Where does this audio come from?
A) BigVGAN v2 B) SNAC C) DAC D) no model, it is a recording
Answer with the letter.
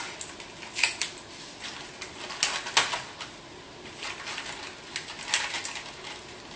D